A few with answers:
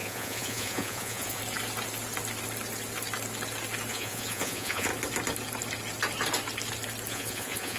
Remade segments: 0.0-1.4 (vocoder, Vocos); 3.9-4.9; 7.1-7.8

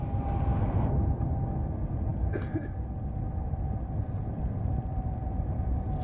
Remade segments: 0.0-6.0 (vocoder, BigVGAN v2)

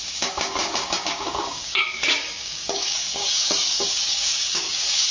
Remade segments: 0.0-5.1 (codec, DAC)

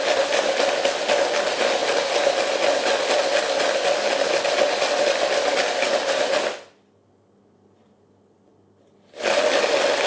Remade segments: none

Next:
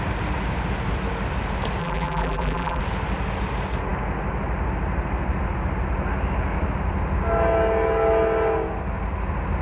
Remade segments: 1.8-2.8 (vocoder, BigVGAN v2)

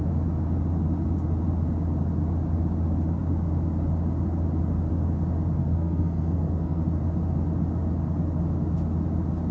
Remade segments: 5.6-6.8 (codec, SNAC)